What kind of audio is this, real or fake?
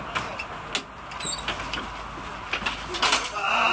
real